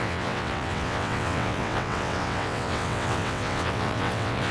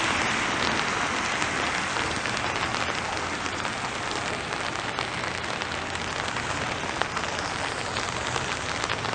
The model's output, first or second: first